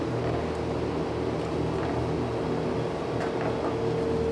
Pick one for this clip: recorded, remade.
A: recorded